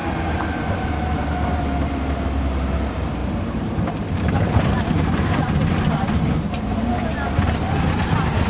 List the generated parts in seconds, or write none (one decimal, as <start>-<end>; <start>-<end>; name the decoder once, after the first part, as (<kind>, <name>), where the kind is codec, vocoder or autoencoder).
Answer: 3.2-4.7 (vocoder, BigVGAN v2)